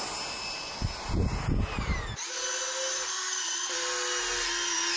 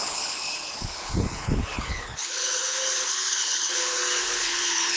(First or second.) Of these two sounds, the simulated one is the second